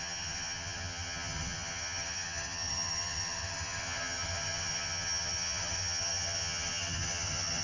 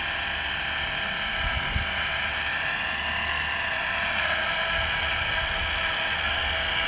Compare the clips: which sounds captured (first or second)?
second